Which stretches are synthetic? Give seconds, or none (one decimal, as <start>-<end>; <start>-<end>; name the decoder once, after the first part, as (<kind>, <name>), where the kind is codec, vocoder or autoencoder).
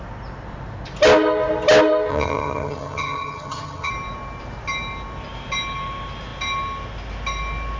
2.1-3.9 (vocoder, HiFi-GAN)